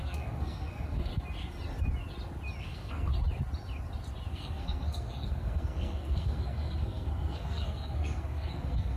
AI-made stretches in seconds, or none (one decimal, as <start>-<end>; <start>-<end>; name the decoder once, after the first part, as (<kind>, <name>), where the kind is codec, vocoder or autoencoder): 0.0-1.1 (codec, SNAC); 2.6-3.1; 4.3-9.0